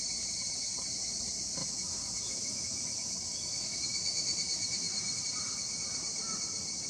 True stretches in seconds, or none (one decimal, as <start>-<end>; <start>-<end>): 0.0-1.6; 5.2-6.9